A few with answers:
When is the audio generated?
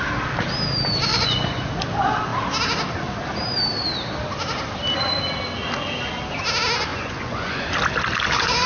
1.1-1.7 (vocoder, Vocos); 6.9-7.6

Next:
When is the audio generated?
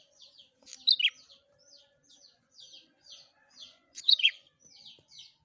0.0-0.7 (vocoder, Vocos); 1.8-5.4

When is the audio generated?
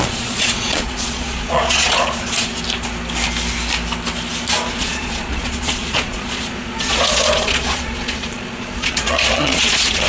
0.0-2.5 (vocoder, Vocos); 4.7-10.1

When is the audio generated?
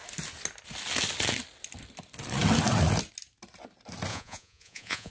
4.1-5.1 (vocoder, Vocos)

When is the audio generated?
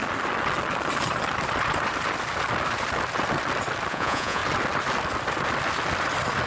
3.9-4.4 (vocoder, Vocos)